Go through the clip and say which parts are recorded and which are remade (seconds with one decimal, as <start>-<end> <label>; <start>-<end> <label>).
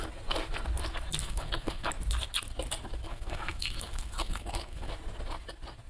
0.0-1.2 recorded; 1.2-1.9 remade; 1.9-3.1 recorded; 3.1-4.9 remade; 4.9-5.9 recorded